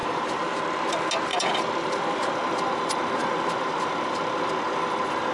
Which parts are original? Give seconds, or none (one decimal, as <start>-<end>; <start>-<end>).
0.6-1.3; 4.5-5.3